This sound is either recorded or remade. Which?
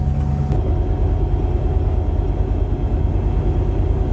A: recorded